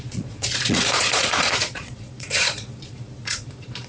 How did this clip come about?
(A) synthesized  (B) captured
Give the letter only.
A